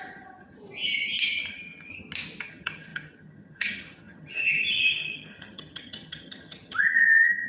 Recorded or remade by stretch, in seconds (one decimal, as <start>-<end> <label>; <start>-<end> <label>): 0.0-0.6 remade; 0.6-1.5 recorded; 1.5-1.9 remade; 1.9-2.4 recorded; 2.4-7.5 remade